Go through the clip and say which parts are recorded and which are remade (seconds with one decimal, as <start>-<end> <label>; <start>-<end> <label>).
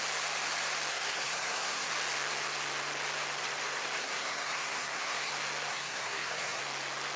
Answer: 0.0-0.9 recorded; 0.9-1.9 remade; 1.9-4.0 recorded; 4.0-5.3 remade; 5.3-5.7 recorded; 5.7-6.6 remade; 6.6-7.2 recorded